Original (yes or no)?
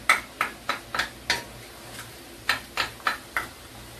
yes